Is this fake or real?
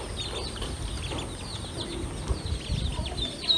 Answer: real